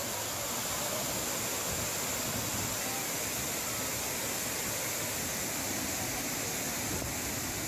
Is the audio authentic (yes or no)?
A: yes